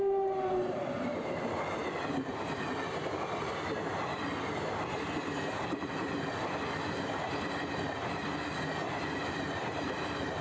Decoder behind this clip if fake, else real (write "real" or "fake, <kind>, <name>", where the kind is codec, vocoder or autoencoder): real